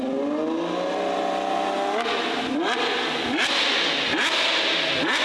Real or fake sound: real